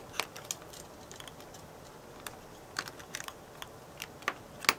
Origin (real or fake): real